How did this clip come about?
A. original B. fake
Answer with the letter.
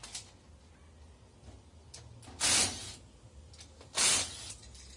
A